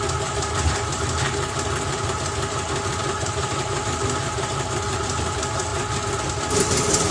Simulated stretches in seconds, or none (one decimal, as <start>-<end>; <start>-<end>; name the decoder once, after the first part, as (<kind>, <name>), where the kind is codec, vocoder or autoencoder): none